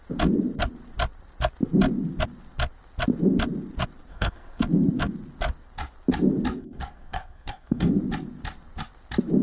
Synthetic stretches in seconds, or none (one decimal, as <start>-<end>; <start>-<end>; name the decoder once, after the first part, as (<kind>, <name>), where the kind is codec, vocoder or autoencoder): 4.1-4.6 (codec, SNAC); 6.6-7.9